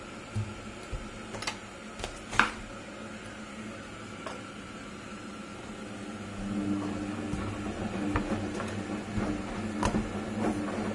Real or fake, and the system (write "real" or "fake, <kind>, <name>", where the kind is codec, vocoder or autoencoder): real